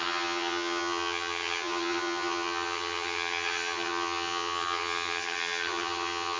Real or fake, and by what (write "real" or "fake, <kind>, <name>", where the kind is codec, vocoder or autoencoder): fake, vocoder, HiFi-GAN